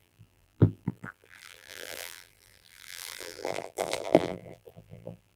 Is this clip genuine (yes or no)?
no